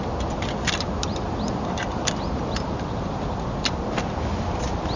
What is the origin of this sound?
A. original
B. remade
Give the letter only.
A